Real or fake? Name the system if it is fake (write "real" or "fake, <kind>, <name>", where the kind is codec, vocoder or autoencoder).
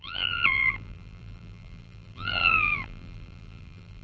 fake, vocoder, BigVGAN v2